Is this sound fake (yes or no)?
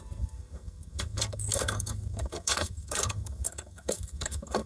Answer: yes